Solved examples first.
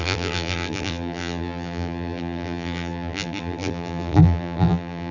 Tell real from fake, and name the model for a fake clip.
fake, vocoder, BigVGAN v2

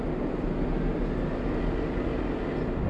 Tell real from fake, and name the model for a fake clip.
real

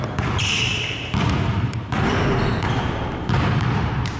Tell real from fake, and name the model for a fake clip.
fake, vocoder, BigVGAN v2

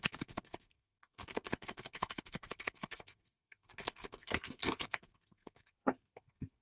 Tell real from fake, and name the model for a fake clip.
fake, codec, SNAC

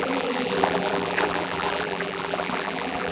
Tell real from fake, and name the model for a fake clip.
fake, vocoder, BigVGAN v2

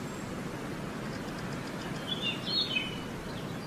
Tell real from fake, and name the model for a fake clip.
real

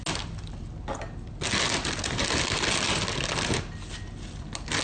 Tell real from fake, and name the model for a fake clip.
real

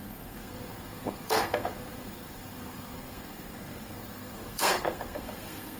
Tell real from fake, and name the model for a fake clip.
fake, codec, SNAC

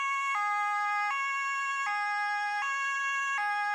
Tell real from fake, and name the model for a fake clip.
real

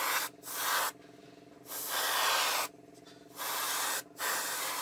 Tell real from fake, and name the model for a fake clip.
real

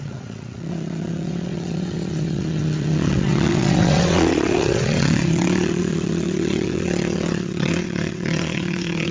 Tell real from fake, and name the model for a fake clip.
fake, vocoder, WaveNeXt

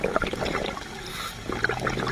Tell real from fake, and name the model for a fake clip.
real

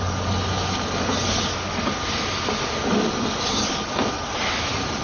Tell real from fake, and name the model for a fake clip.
real